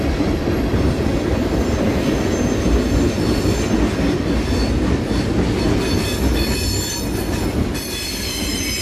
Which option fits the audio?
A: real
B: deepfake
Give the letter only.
A